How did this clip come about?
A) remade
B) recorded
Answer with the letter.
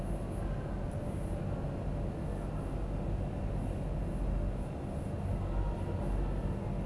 B